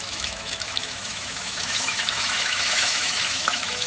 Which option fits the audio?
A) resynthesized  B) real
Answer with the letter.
A